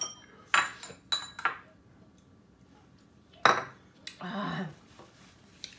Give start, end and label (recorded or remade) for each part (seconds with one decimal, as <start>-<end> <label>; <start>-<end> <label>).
0.0-5.8 recorded

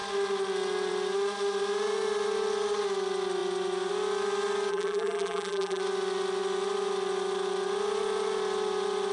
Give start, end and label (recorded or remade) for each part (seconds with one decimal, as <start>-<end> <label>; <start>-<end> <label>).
0.0-4.7 recorded; 4.7-5.8 remade; 5.8-9.1 recorded

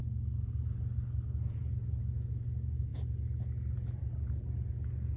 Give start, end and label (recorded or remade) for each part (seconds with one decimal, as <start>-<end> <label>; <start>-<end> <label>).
0.0-5.2 recorded

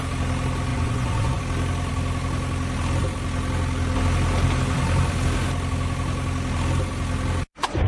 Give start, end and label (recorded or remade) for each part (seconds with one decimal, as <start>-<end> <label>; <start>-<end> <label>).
0.0-0.7 recorded; 0.7-1.4 remade; 1.4-7.9 recorded

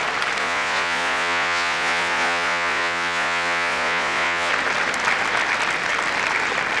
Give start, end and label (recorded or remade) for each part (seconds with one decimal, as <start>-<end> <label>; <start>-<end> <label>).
0.0-0.4 recorded; 0.4-4.5 remade; 4.5-6.8 recorded

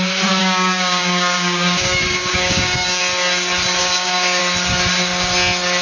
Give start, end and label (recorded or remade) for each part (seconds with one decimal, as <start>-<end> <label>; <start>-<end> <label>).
0.0-0.4 recorded; 0.4-3.0 remade; 3.0-3.8 recorded; 3.8-4.4 remade; 4.4-5.8 recorded

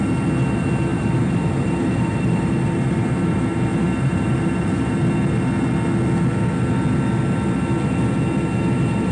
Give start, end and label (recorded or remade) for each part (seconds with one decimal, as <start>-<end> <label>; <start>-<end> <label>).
0.0-0.9 recorded; 0.9-4.9 remade; 4.9-9.1 recorded